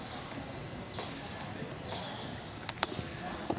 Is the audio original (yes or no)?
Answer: yes